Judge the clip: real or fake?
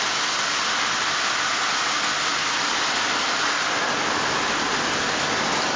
real